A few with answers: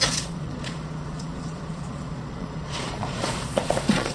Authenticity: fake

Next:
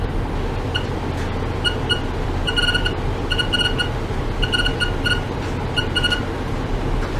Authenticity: real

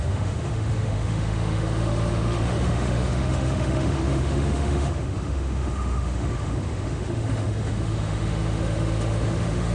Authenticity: fake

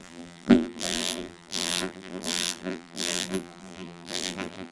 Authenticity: fake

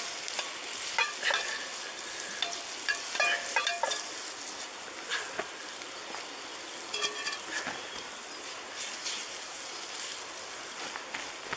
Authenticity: real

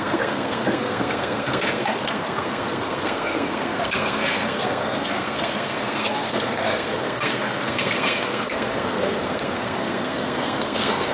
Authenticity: fake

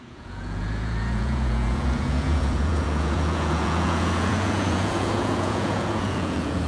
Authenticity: fake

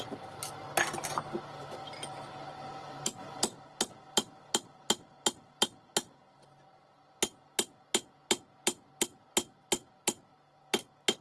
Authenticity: real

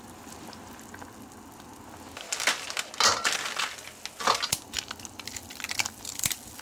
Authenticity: real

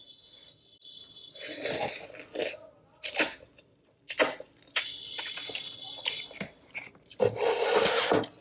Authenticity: real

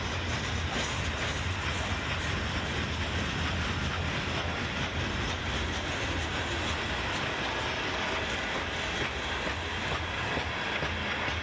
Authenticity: real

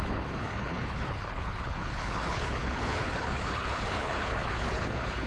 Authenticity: fake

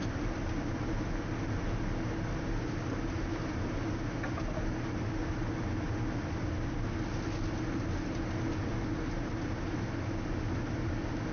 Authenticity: real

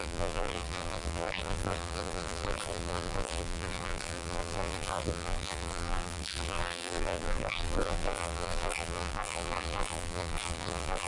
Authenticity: fake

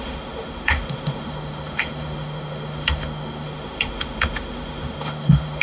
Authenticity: fake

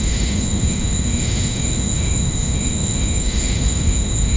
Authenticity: fake